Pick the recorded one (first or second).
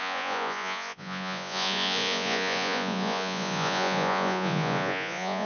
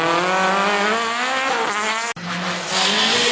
second